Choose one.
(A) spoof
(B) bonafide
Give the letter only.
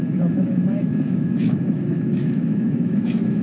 A